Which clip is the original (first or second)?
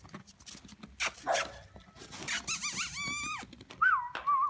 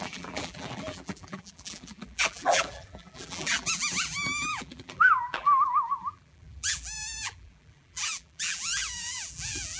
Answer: first